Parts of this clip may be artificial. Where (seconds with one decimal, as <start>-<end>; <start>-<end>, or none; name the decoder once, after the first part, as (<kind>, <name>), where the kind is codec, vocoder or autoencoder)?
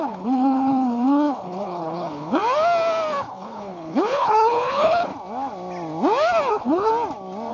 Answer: 0.0-2.4 (codec, HILCodec); 3.3-5.1; 6.5-6.9